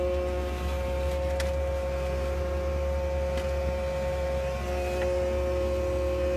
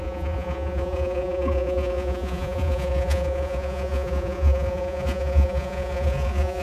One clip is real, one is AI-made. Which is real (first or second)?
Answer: first